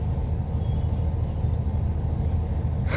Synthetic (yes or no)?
no